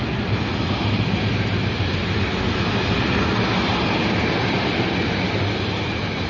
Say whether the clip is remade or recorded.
recorded